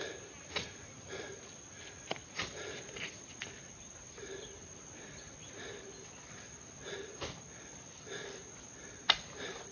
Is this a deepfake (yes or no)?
no